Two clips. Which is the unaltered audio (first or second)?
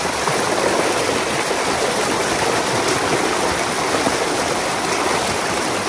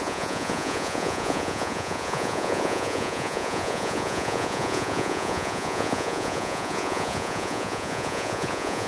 first